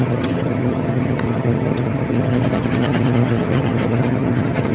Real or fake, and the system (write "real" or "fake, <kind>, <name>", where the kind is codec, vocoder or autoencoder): fake, vocoder, HiFi-GAN